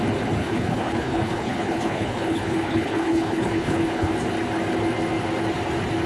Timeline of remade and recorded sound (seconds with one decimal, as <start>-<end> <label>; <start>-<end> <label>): 0.0-0.4 recorded; 0.4-4.1 remade; 4.1-6.1 recorded